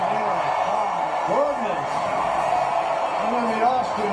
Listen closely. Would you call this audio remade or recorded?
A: recorded